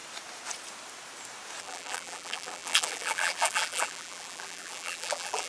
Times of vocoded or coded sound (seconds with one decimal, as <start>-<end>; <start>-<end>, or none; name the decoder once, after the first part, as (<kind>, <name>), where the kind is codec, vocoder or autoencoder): 1.6-5.5 (vocoder, BigVGAN v2)